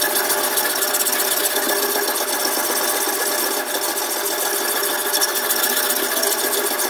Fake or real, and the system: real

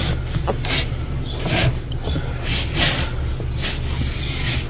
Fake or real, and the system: real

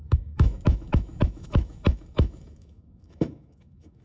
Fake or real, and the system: fake, autoencoder, DAC-VAE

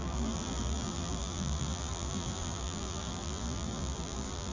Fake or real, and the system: fake, vocoder, BigVGAN v2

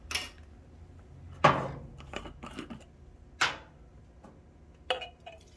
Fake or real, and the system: real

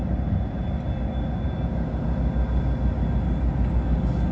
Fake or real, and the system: real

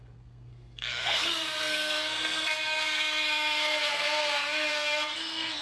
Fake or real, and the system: fake, codec, SNAC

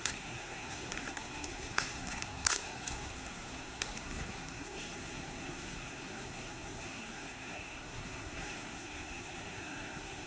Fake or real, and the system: fake, codec, SNAC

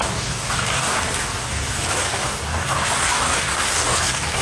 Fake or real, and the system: fake, codec, DAC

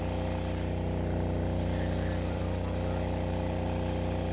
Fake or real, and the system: fake, vocoder, BigVGAN v2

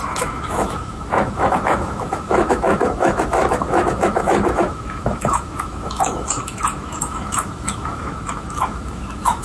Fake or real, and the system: fake, autoencoder, DAC-VAE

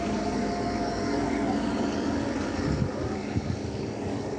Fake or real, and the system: fake, codec, DAC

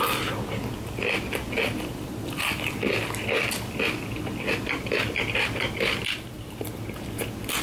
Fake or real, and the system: real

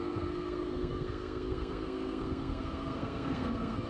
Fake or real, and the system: fake, codec, SNAC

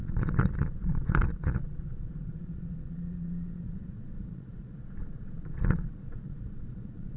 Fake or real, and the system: fake, vocoder, Vocos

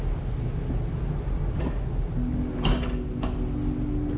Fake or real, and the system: real